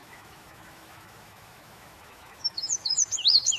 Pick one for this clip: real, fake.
fake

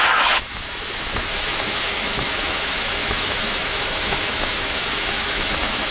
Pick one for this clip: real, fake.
fake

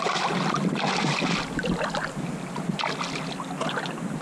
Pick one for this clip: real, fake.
real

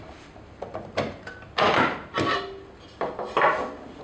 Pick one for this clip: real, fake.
real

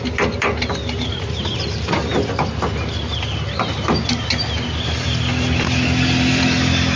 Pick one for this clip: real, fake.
real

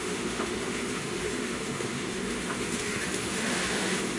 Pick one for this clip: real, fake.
fake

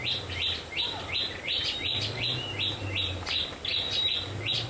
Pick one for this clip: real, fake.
real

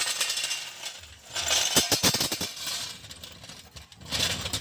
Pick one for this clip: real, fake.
real